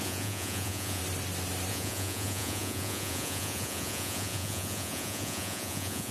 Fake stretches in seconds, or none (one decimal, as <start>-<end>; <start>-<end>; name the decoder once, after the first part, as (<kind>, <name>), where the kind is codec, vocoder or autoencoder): 0.0-1.0 (vocoder, Vocos); 1.7-6.1

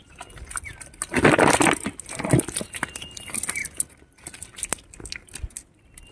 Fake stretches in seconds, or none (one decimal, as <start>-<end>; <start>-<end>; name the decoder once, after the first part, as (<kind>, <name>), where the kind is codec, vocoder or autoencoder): none